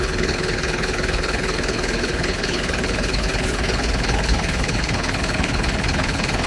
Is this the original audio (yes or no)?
no